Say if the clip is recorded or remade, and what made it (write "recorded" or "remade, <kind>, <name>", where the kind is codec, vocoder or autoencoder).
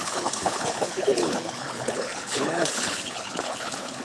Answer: remade, codec, HILCodec